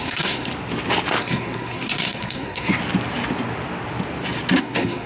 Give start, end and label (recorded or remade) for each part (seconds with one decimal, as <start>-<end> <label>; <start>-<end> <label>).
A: 0.0-0.5 remade; 0.5-1.2 recorded; 1.2-2.8 remade; 2.8-4.6 recorded; 4.6-5.1 remade